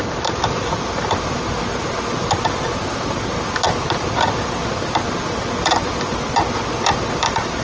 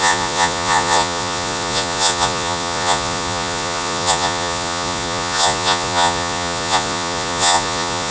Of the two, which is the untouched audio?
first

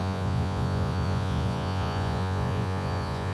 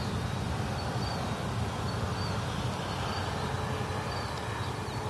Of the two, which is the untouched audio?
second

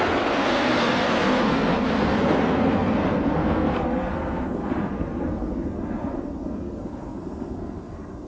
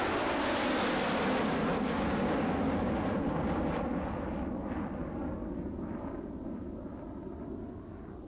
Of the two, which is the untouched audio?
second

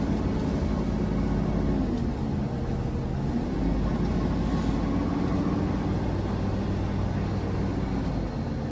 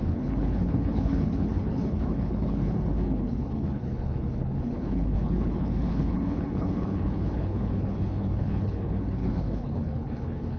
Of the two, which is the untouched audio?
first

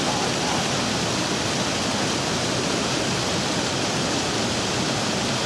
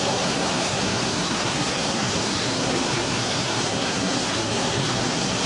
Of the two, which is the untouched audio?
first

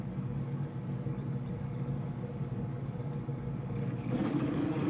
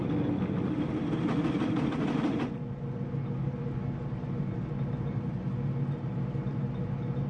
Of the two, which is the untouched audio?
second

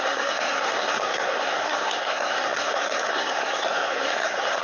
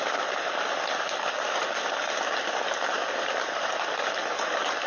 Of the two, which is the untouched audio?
second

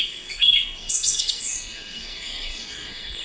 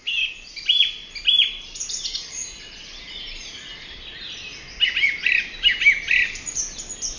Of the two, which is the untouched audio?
second